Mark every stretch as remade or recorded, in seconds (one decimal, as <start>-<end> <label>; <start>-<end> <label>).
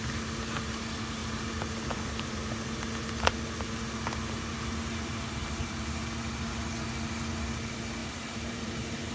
0.0-1.2 recorded; 1.2-2.5 remade; 2.5-5.4 recorded; 5.4-6.0 remade; 6.0-8.0 recorded; 8.0-9.1 remade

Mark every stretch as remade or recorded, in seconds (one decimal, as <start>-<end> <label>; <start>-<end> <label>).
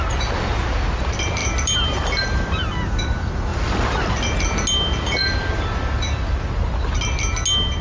0.0-1.4 recorded; 1.4-2.2 remade; 2.2-7.8 recorded